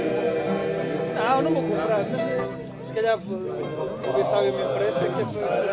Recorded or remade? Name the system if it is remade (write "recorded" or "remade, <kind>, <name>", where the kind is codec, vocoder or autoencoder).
recorded